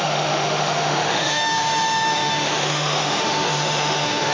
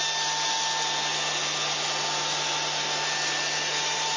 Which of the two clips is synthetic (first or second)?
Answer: first